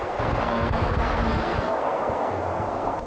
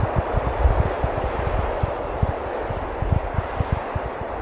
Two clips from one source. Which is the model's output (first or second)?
first